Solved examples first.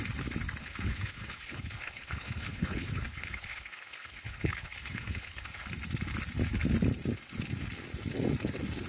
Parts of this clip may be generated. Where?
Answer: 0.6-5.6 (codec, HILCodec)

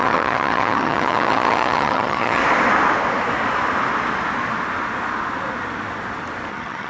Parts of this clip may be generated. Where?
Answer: 0.0-2.4 (vocoder, HiFi-GAN); 6.5-6.9

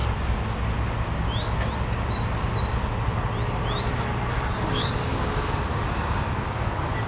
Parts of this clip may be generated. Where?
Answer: 4.3-7.1 (codec, DAC)

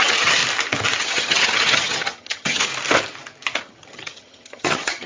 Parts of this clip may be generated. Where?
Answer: 0.0-0.4 (vocoder, HiFi-GAN); 1.0-2.7; 3.6-5.1

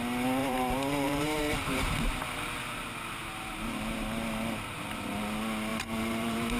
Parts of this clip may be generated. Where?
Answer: 0.4-2.1 (vocoder, BigVGAN v2); 5.7-6.6

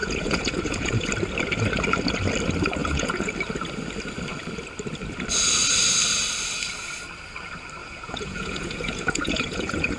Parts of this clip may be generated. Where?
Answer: 0.0-1.1 (vocoder, Vocos); 2.8-3.3; 7.8-10.0